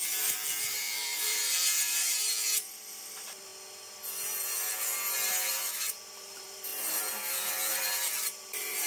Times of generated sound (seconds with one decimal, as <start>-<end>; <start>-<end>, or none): 0.0-3.5; 5.5-8.9